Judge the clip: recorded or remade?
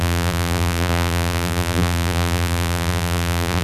remade